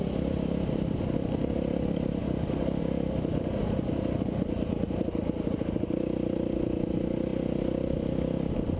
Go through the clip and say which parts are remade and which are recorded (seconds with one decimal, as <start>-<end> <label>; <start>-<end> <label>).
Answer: 0.0-8.8 recorded